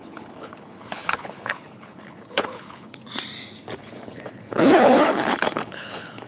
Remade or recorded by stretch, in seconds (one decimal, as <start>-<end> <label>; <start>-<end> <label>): 0.0-3.0 remade; 3.0-3.8 recorded; 3.8-6.3 remade